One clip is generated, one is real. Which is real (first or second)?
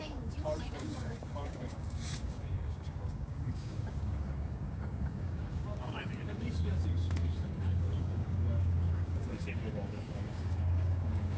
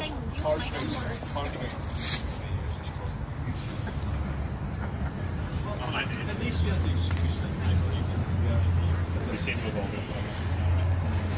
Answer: second